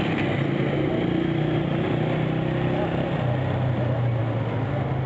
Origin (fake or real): real